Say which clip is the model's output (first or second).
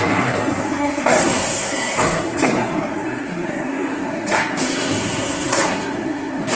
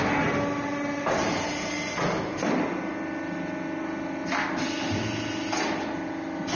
first